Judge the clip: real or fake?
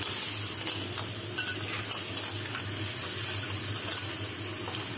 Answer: real